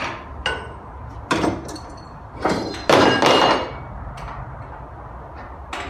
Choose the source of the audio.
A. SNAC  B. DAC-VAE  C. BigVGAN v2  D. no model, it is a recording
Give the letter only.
D